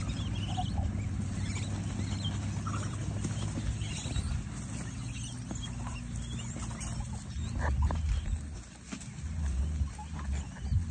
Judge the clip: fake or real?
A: real